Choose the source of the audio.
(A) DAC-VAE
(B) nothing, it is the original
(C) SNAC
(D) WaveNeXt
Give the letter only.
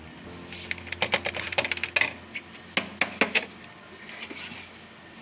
B